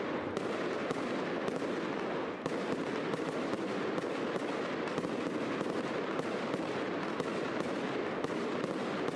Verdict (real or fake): real